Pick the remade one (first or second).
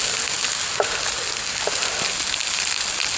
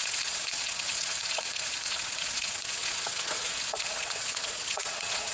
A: second